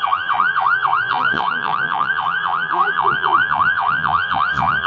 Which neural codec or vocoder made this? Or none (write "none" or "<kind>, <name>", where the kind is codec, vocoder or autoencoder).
vocoder, Vocos